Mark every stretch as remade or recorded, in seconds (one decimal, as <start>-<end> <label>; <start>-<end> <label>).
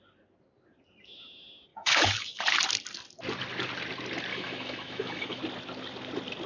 0.0-1.7 recorded; 1.7-2.4 remade; 2.4-4.3 recorded; 4.3-5.4 remade; 5.4-6.5 recorded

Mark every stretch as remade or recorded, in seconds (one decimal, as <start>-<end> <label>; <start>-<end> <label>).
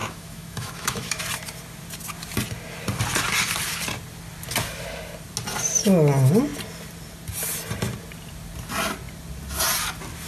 0.0-1.2 remade; 1.2-10.3 recorded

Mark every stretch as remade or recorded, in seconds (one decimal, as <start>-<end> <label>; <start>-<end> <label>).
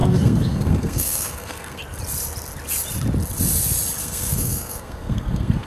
0.0-1.8 remade; 1.8-4.0 recorded; 4.0-5.7 remade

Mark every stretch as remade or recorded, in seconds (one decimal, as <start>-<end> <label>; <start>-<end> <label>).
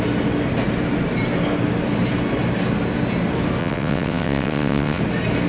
0.0-3.6 recorded; 3.6-5.0 remade; 5.0-5.5 recorded